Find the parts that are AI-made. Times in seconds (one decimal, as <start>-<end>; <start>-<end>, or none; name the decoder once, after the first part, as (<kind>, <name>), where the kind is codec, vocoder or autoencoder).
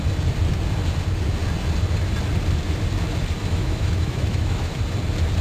3.4-4.8 (autoencoder, DAC-VAE)